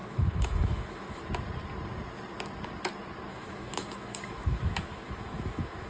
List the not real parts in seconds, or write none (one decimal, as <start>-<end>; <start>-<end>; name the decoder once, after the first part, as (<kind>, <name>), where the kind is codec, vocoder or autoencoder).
0.0-1.2 (autoencoder, DAC-VAE); 3.3-5.9